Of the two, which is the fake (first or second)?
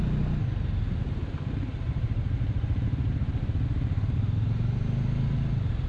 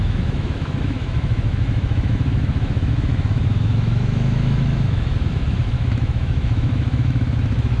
second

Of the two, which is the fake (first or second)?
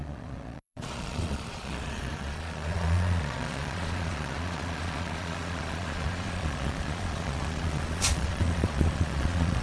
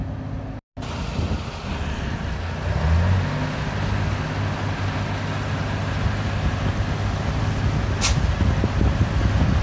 first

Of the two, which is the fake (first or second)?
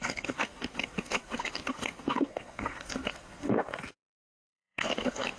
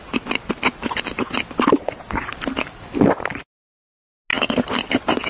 first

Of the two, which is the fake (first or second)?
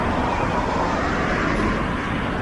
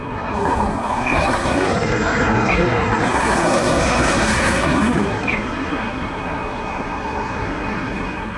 second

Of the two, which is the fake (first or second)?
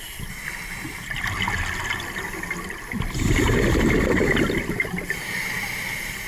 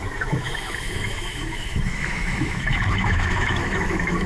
second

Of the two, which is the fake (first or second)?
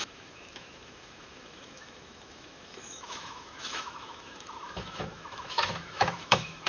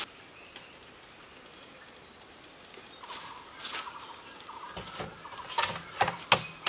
first